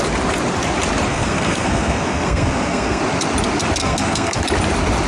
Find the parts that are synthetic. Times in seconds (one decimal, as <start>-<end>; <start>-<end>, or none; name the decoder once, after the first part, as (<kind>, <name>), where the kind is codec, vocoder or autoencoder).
1.1-3.0 (codec, SNAC); 3.8-4.4